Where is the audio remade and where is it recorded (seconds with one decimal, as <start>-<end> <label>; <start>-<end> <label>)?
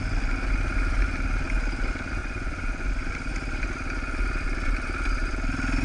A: 0.0-2.2 recorded; 2.2-3.1 remade; 3.1-5.8 recorded